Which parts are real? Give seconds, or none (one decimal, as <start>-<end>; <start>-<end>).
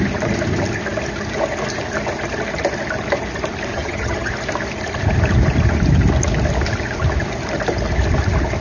0.0-3.7; 4.3-8.6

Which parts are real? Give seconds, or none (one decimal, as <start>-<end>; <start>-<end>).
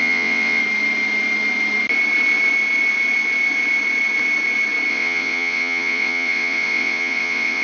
0.6-4.9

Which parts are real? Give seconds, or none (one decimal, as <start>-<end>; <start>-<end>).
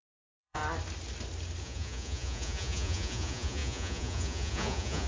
0.6-1.6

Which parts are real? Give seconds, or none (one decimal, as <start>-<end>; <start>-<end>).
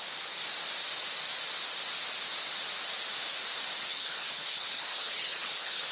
0.0-3.8